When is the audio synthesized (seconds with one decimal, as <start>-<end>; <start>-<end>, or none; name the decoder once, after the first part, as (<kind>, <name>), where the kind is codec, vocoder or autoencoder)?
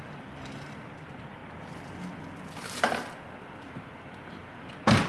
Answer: none